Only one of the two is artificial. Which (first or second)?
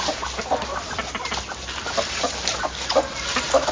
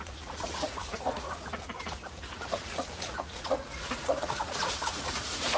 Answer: second